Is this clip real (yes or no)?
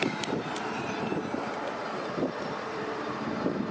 no